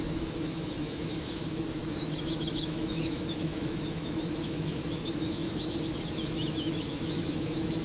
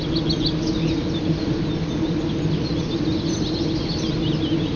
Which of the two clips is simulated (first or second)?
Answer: first